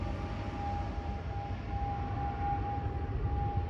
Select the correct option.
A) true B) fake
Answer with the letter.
A